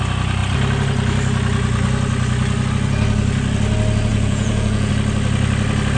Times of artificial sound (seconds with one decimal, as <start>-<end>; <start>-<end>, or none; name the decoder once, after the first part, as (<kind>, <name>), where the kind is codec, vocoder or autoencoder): 4.1-4.9 (vocoder, Vocos)